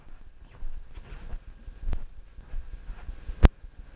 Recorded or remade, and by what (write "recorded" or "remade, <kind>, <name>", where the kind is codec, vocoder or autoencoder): recorded